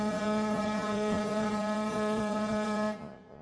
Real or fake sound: fake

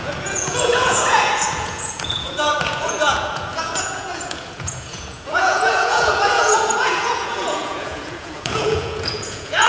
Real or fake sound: fake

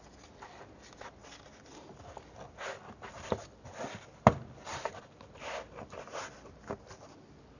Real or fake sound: real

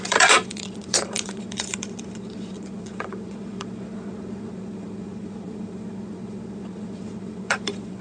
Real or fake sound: fake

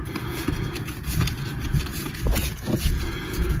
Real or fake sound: fake